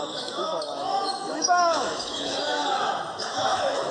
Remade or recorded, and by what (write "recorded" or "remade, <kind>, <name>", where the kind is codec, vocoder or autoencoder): remade, autoencoder, DAC-VAE